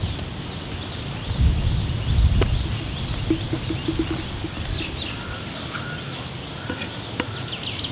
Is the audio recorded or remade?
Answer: recorded